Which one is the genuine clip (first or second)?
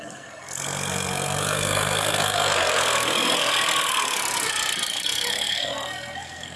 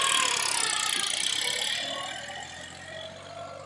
second